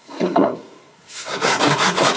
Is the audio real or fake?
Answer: fake